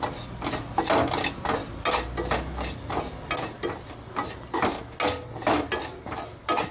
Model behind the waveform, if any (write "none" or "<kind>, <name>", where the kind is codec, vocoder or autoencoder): none